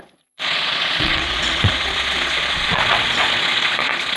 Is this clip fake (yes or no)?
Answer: yes